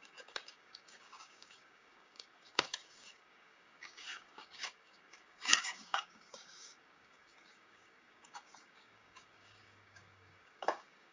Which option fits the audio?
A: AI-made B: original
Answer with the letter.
A